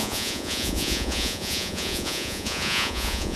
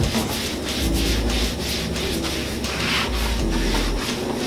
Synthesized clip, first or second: first